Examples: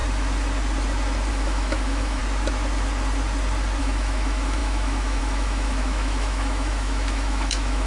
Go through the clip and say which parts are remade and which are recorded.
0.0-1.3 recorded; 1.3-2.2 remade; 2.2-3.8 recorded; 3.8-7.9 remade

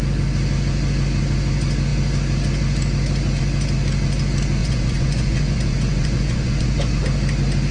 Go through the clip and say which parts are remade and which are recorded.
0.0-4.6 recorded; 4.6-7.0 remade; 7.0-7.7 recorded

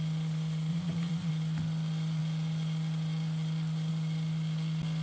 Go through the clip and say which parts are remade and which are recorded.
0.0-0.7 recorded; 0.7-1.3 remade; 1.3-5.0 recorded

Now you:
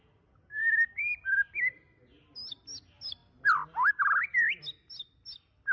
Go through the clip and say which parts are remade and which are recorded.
0.0-5.7 recorded

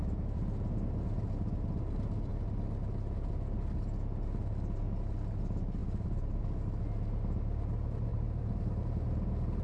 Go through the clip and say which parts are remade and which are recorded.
0.0-5.8 recorded; 5.8-6.4 remade; 6.4-8.1 recorded; 8.1-8.8 remade; 8.8-9.6 recorded

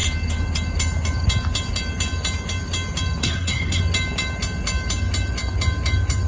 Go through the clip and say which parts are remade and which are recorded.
0.0-3.2 recorded; 3.2-3.8 remade; 3.8-6.3 recorded